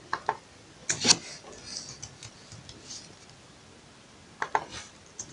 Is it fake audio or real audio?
real